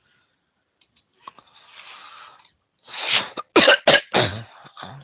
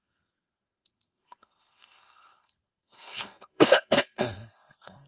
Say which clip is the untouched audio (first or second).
first